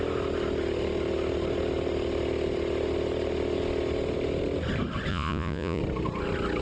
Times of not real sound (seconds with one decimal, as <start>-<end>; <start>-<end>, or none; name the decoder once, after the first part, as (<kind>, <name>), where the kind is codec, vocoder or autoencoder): 5.1-5.8 (vocoder, Vocos)

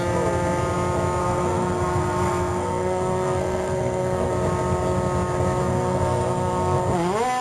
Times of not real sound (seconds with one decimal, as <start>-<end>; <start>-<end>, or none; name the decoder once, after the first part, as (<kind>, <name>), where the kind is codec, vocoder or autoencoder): 1.2-4.3 (codec, SNAC); 5.6-6.8